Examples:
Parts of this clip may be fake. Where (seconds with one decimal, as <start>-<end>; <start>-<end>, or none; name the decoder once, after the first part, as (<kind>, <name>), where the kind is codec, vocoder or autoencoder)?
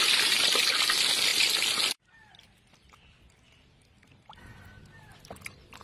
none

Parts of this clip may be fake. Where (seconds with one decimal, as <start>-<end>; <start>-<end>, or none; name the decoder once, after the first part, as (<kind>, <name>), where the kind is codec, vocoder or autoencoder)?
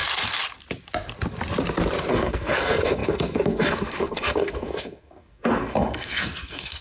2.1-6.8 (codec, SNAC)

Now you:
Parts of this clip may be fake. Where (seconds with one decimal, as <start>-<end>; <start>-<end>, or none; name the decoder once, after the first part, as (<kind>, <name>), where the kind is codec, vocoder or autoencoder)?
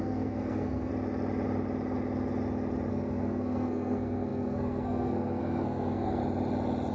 0.0-0.9 (codec, SNAC); 2.9-6.2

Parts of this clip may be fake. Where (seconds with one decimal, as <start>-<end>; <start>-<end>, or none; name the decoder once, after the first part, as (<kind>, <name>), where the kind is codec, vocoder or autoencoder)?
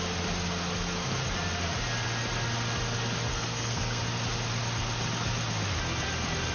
3.3-4.0 (codec, SNAC)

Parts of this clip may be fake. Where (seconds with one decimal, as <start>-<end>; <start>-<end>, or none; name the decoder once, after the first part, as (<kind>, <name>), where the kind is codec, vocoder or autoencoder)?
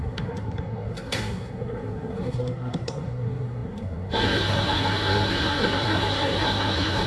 0.0-7.1 (codec, SNAC)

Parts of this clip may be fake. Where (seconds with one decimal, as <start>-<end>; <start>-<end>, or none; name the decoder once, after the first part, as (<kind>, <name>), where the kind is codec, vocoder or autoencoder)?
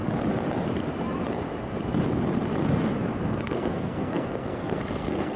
3.2-5.4 (codec, SNAC)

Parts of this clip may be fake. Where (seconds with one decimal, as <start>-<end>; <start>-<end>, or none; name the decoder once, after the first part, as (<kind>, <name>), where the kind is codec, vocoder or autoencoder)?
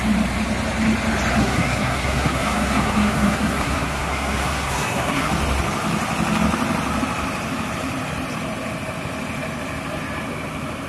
1.4-5.3 (codec, SNAC)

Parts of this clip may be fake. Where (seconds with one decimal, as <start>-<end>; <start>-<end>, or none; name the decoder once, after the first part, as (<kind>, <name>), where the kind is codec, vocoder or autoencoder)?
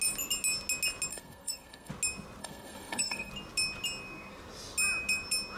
1.1-1.9 (codec, SNAC); 2.4-3.3